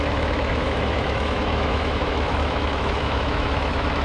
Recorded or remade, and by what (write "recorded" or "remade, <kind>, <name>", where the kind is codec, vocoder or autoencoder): remade, autoencoder, DAC-VAE